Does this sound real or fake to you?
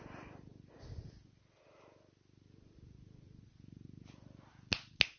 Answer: real